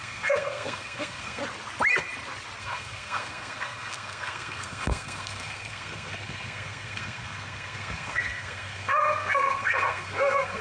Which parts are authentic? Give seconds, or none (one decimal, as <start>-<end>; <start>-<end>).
1.4-2.6